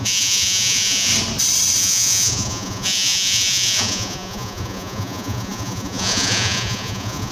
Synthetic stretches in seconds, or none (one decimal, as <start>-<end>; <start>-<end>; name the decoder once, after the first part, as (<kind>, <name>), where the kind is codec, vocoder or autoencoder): 0.0-1.1 (vocoder, Vocos); 1.8-7.3